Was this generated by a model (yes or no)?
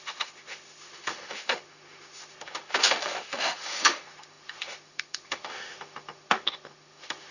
yes